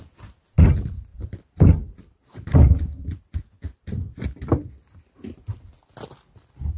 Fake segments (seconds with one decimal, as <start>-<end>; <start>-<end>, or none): 1.1-3.2